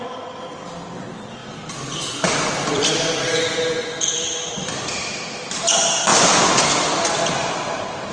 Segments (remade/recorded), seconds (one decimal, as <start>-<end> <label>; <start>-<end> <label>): 0.0-1.4 remade; 1.4-2.1 recorded; 2.1-6.1 remade; 6.1-6.7 recorded; 6.7-7.2 remade; 7.2-8.1 recorded